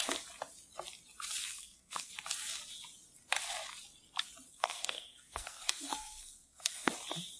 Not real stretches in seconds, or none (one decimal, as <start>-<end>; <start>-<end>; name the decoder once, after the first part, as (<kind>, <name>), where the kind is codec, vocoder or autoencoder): 1.4-2.1 (codec, SNAC); 4.5-6.9